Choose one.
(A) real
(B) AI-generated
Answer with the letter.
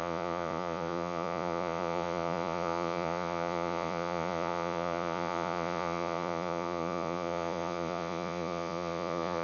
B